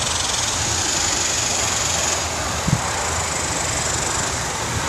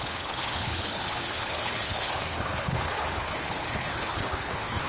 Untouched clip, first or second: first